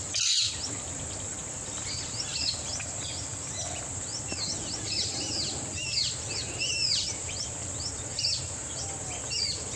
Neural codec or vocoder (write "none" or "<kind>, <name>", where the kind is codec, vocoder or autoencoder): none